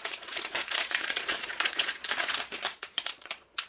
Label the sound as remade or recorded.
remade